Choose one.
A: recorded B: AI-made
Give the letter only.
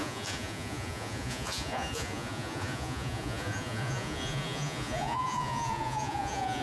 B